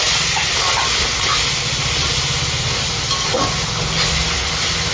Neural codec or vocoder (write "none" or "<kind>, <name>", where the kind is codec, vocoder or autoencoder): none